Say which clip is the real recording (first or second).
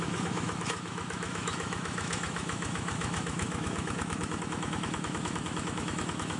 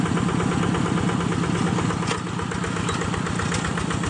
second